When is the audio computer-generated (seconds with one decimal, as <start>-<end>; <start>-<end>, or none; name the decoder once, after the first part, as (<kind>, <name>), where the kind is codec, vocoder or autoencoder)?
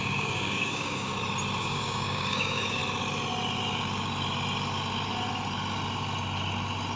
0.0-1.1 (codec, DAC); 1.6-2.8